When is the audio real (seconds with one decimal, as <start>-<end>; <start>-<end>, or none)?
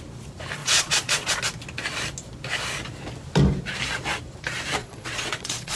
0.0-0.6; 1.4-4.8